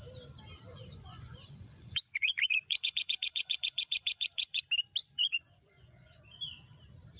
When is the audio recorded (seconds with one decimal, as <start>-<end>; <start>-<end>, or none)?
0.0-0.7; 4.6-5.0; 6.2-7.2